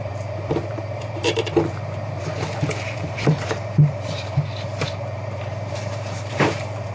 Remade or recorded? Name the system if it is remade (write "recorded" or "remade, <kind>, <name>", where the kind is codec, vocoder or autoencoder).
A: remade, vocoder, BigVGAN v2